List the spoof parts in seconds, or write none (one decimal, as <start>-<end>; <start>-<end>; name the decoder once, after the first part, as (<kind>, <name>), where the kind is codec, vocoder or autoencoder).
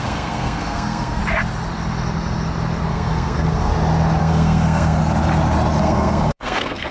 0.0-1.2 (codec, SNAC); 2.9-3.7; 4.2-5.0; 5.8-6.9